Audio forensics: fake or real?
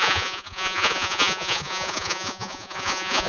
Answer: fake